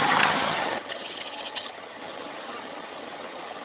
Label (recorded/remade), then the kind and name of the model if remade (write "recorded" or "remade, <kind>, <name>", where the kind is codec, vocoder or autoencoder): remade, vocoder, HiFi-GAN